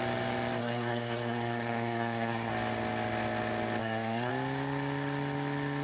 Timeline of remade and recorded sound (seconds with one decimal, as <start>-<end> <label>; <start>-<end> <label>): 0.0-0.6 recorded; 0.6-2.5 remade; 2.5-3.8 recorded; 3.8-4.3 remade; 4.3-5.8 recorded